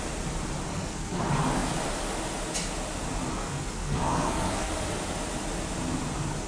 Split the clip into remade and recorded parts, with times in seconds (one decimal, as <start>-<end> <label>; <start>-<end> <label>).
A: 0.0-0.7 recorded; 0.7-1.2 remade; 1.2-3.3 recorded; 3.3-4.7 remade; 4.7-6.5 recorded